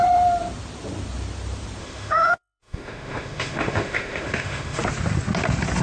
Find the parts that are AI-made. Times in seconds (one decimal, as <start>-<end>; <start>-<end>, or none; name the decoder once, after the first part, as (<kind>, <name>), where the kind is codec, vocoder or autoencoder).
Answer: 1.8-4.8 (autoencoder, DAC-VAE)